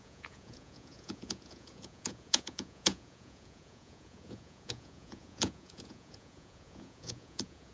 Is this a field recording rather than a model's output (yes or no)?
no